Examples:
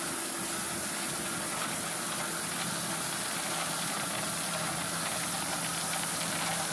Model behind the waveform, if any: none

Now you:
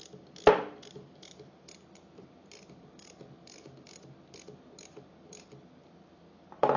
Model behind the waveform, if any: none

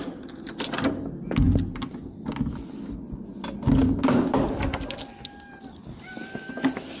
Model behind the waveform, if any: none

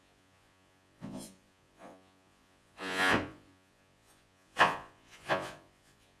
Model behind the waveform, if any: vocoder, Vocos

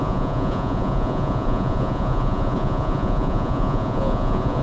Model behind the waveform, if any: vocoder, Vocos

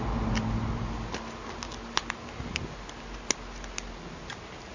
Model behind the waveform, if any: none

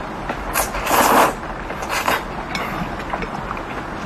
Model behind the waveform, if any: none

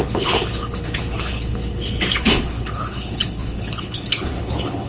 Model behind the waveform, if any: codec, HILCodec